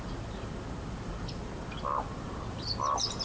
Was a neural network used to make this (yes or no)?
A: no